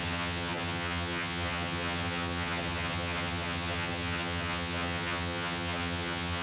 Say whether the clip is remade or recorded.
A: remade